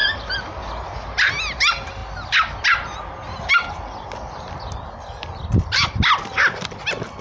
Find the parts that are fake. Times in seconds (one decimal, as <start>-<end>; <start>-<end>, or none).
none